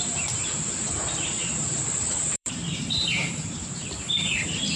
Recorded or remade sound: remade